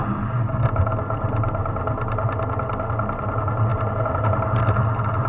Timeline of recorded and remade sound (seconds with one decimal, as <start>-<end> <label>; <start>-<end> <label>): 0.0-5.3 recorded